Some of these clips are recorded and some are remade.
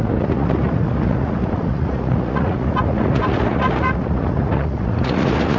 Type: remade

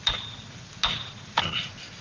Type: recorded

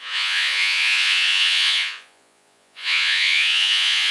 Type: remade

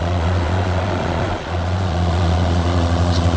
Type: remade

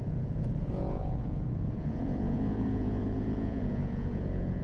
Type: remade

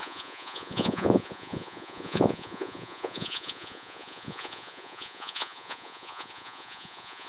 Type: remade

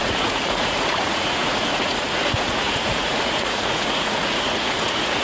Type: remade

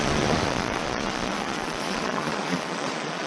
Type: remade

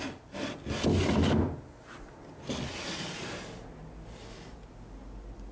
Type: recorded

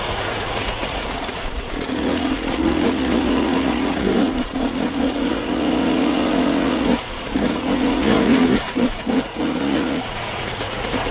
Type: remade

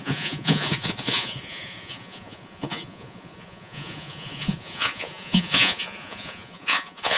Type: remade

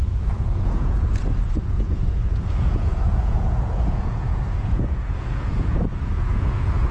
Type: remade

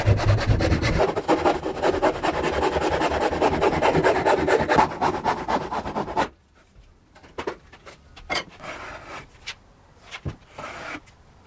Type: recorded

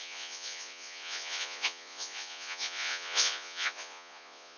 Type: remade